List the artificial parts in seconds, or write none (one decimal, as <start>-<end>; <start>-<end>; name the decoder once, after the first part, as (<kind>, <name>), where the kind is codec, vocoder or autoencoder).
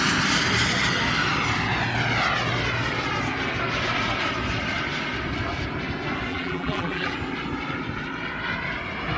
6.3-7.1 (vocoder, BigVGAN v2)